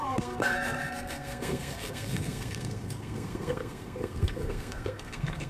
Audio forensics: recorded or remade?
remade